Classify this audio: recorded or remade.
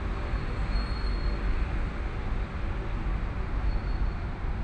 recorded